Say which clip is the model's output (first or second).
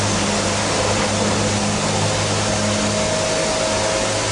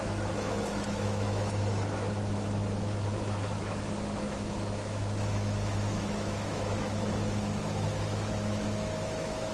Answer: second